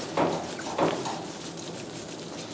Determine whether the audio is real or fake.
real